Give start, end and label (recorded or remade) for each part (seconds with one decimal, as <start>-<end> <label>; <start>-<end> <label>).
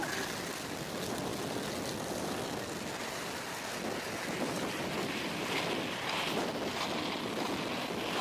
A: 0.0-8.2 recorded